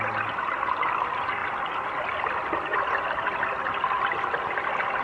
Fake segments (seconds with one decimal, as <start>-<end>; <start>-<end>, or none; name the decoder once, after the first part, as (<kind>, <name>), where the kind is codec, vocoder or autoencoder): none